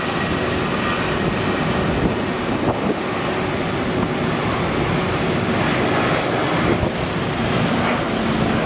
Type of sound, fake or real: real